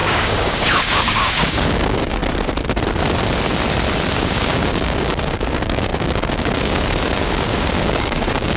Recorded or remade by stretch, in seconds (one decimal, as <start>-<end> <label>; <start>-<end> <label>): 0.0-2.2 remade; 2.2-4.1 recorded; 4.1-8.6 remade